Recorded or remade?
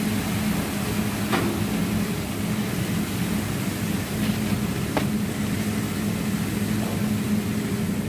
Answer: recorded